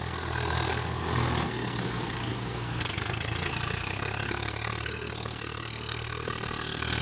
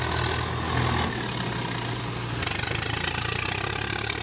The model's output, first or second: first